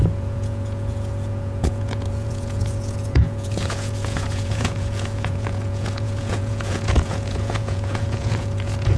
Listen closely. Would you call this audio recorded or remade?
remade